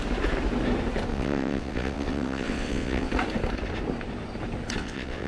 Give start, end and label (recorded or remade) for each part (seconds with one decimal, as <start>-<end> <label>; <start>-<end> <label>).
0.0-1.1 recorded; 1.1-3.1 remade; 3.1-4.8 recorded; 4.8-5.3 remade